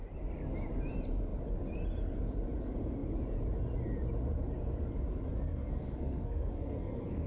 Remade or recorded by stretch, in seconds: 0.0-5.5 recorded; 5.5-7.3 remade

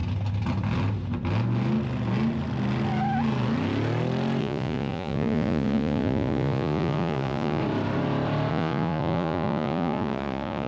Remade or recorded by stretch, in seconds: 0.0-4.4 recorded; 4.4-7.6 remade; 7.6-8.5 recorded; 8.5-10.7 remade

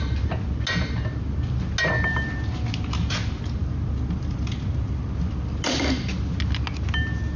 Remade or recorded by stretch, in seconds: 0.0-7.4 recorded

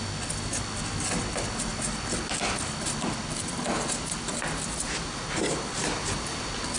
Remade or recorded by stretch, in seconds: 0.0-6.8 recorded

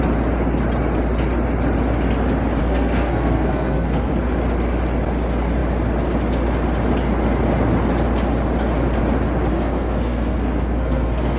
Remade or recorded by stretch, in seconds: 0.0-2.6 recorded; 2.6-4.1 remade; 4.1-9.5 recorded; 9.5-11.4 remade

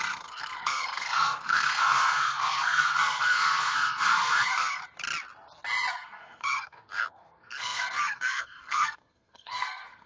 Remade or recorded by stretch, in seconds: 0.0-4.8 remade; 4.8-5.9 recorded; 5.9-10.1 remade

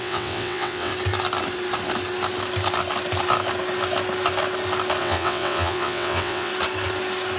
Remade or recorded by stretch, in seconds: 0.0-0.9 remade; 0.9-5.0 recorded; 5.0-6.5 remade; 6.5-7.4 recorded